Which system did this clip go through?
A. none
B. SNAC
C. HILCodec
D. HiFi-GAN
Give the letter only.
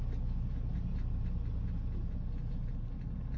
A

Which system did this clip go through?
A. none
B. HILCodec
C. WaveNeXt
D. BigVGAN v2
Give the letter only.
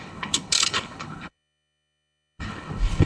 B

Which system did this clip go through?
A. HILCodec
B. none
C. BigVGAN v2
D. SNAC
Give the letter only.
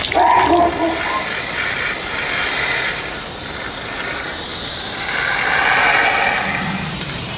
B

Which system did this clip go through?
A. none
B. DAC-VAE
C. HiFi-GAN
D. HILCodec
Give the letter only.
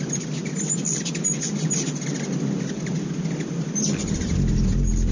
A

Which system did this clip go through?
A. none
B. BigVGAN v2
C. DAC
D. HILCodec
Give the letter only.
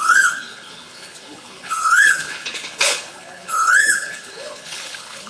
D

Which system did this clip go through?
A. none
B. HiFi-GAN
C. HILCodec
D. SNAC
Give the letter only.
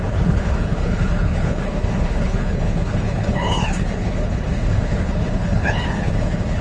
C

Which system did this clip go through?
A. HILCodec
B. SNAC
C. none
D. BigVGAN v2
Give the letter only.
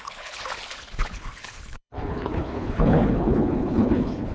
A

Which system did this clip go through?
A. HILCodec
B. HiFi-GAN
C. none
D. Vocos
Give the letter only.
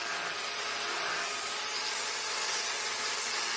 C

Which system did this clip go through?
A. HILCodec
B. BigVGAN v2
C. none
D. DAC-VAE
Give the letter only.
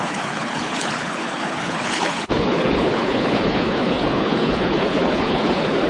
A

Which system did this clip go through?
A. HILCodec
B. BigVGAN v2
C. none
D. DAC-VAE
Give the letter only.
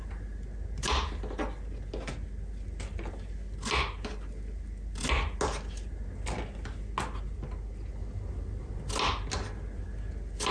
C